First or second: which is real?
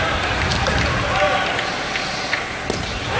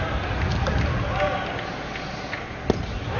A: second